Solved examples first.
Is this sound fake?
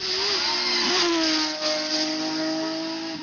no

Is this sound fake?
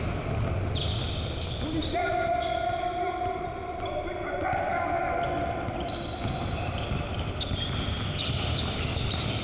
no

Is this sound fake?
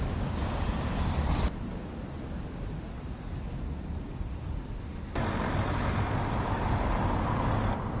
no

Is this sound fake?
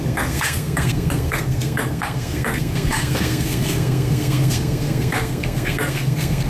yes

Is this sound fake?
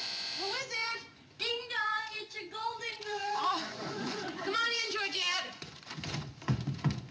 yes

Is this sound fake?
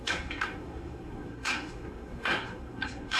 yes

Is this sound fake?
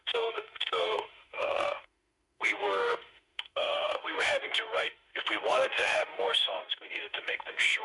yes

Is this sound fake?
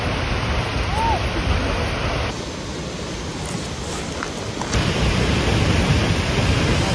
no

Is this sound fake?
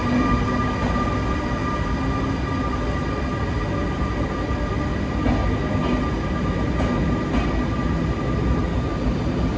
no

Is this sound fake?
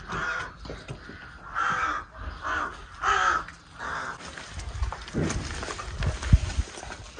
no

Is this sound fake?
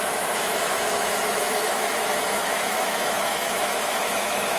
yes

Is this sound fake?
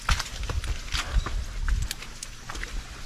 no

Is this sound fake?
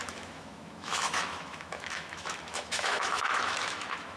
yes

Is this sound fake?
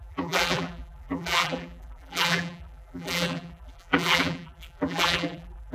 yes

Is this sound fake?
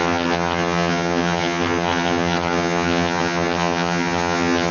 yes